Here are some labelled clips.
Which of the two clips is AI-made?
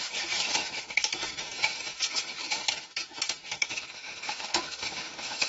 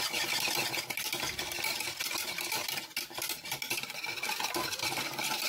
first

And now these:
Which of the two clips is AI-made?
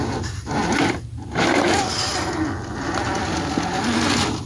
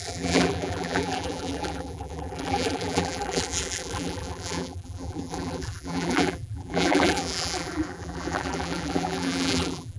second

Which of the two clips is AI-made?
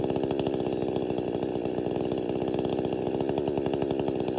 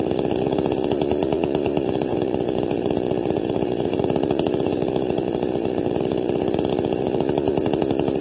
second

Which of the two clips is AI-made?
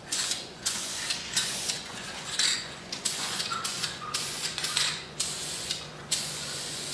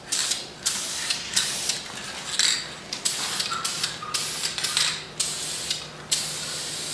first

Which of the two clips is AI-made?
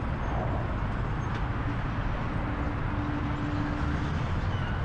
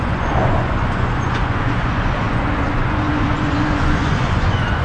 second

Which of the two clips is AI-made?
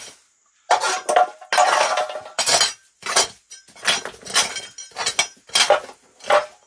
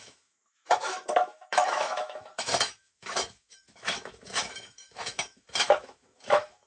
second